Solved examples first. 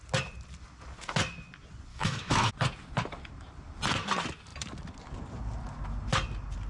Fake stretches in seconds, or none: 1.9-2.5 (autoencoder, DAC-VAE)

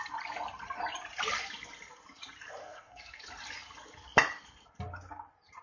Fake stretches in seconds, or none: 2.6-3.2 (codec, SNAC)

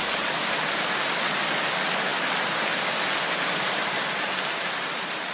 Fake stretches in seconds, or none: none

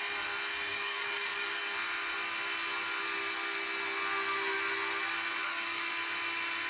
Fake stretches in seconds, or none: 0.7-1.6 (codec, DAC); 5.4-5.9

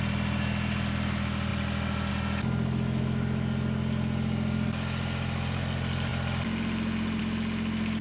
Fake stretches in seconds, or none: none

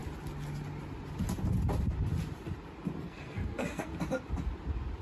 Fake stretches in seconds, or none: 3.0-3.9 (codec, SNAC)

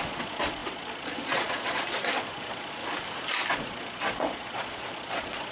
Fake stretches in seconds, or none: 0.0-2.8 (vocoder, Vocos); 3.5-5.5

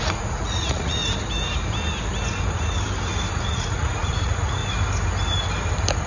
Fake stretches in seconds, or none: 0.0-1.0 (vocoder, Vocos); 3.3-4.6